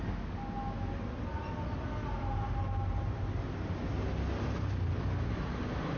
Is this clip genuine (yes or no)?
yes